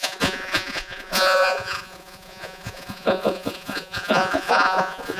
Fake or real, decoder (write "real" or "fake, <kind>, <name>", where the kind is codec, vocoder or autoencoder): fake, vocoder, Vocos